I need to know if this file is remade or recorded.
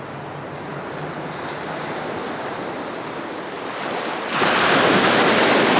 recorded